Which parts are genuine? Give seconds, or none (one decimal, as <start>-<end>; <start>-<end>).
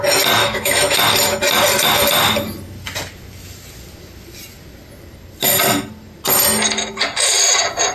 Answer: 0.0-0.4; 1.0-7.9